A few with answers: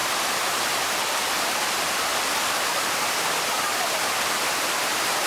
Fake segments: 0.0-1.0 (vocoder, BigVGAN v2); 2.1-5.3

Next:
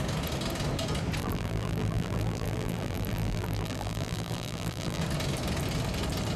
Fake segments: 1.2-5.0 (vocoder, BigVGAN v2)